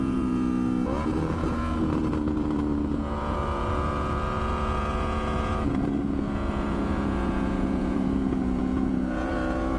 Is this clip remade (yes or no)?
yes